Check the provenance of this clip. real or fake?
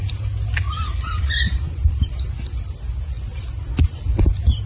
fake